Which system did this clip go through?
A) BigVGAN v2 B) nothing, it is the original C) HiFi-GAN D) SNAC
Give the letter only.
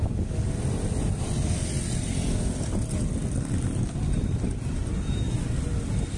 B